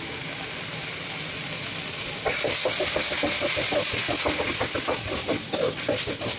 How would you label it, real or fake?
real